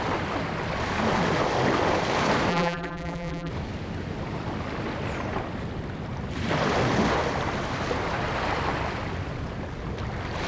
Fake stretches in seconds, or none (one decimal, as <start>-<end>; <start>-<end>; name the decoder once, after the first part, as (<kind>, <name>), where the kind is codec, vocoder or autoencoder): 2.5-3.5 (vocoder, BigVGAN v2)